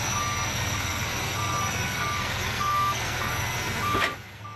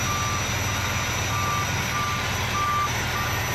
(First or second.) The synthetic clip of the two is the first